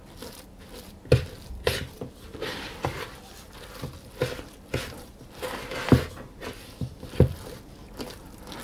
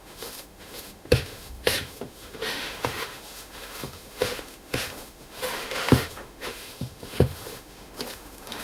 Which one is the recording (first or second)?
first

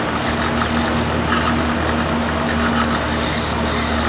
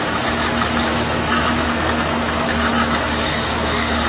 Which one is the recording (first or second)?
first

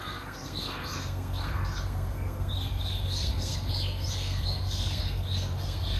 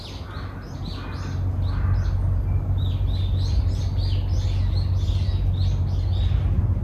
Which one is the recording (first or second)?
second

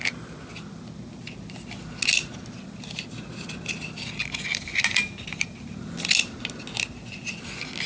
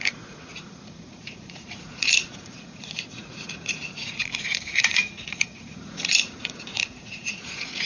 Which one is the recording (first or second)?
first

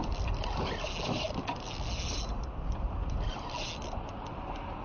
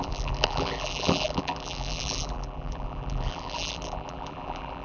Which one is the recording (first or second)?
first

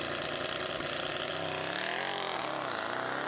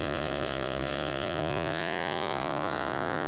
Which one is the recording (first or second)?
first